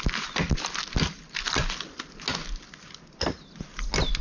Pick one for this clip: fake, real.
real